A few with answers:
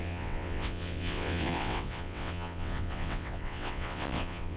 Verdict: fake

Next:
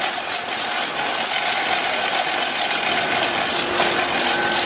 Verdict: real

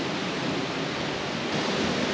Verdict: real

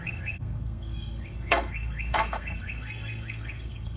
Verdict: fake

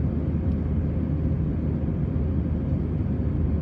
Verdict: real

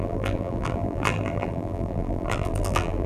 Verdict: fake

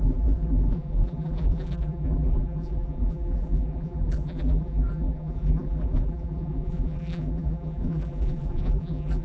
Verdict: fake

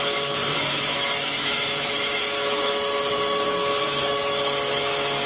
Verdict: fake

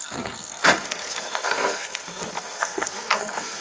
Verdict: fake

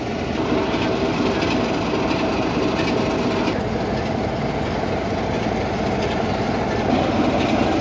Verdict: real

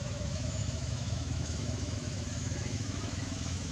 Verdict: fake